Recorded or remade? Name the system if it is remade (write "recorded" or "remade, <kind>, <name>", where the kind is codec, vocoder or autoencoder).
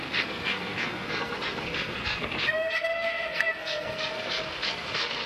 remade, codec, SNAC